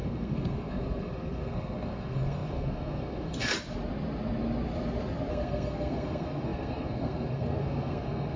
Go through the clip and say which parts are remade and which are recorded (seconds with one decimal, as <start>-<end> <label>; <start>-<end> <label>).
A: 0.0-3.5 remade; 3.5-5.3 recorded; 5.3-8.4 remade